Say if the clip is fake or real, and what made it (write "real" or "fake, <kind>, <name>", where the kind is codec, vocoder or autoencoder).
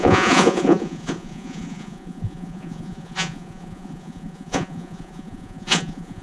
fake, vocoder, Vocos